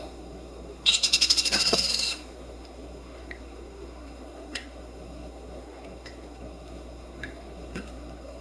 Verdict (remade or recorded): remade